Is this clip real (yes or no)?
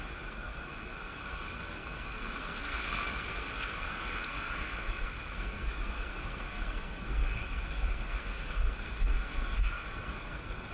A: no